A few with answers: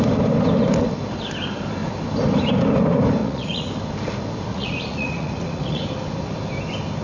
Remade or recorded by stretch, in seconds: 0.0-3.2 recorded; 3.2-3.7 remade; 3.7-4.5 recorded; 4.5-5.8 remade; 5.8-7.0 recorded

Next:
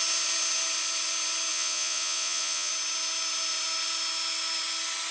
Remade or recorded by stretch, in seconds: 0.0-1.5 recorded; 1.5-2.7 remade; 2.7-5.1 recorded

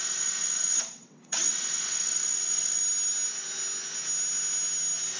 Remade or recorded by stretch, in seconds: 0.0-2.8 remade; 2.8-5.2 recorded

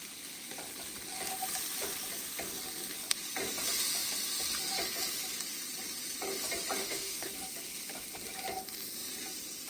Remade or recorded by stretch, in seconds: 0.0-6.8 recorded; 6.8-7.3 remade; 7.3-9.7 recorded

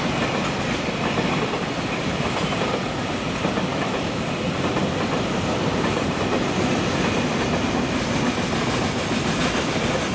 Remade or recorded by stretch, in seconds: 0.0-3.7 recorded; 3.7-4.2 remade; 4.2-10.1 recorded

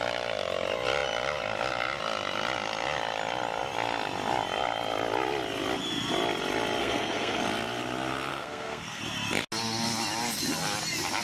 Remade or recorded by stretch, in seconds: 0.0-6.8 recorded; 6.8-7.4 remade; 7.4-8.3 recorded; 8.3-9.0 remade; 9.0-11.2 recorded

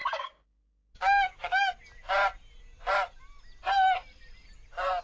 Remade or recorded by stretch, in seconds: 0.0-1.7 remade; 1.7-5.0 recorded

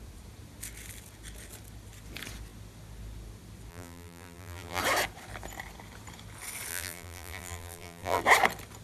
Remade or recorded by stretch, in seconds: 0.0-3.7 recorded; 3.7-4.8 remade; 4.8-6.7 recorded; 6.7-8.2 remade; 8.2-8.8 recorded